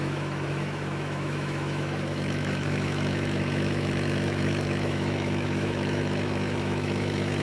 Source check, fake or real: fake